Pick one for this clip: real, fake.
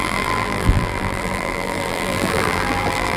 fake